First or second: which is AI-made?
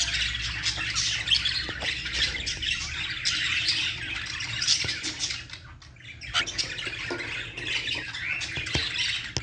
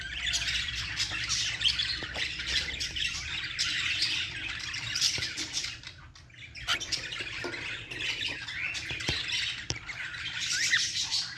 second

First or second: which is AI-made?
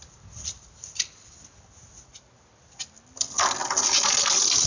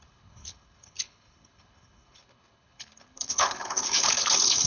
second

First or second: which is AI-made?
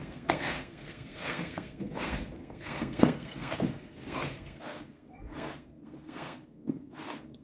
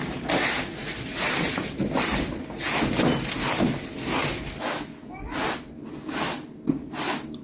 first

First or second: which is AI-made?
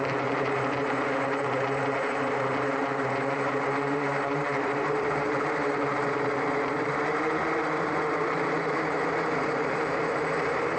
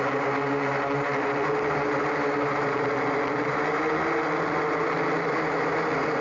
first